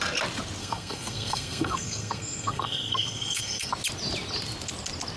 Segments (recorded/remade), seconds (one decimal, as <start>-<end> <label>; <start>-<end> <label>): 0.0-0.6 recorded; 0.6-3.7 remade; 3.7-5.2 recorded